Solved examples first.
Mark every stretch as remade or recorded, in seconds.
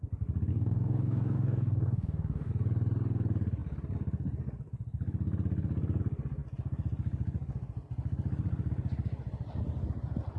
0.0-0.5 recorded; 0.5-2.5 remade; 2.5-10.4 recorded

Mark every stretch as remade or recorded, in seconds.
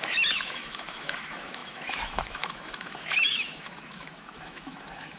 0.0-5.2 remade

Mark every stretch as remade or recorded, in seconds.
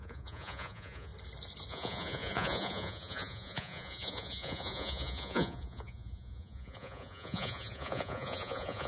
0.0-1.1 remade; 1.1-1.7 recorded; 1.7-8.9 remade